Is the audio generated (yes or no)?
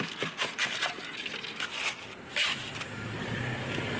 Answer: no